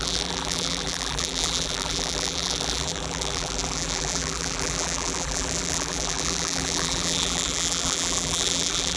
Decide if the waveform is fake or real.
fake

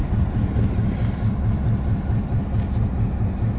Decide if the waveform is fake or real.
real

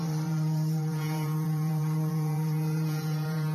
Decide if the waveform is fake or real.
fake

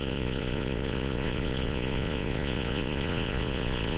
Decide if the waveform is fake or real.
fake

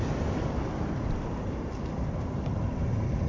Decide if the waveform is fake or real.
real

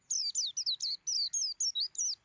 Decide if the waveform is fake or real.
real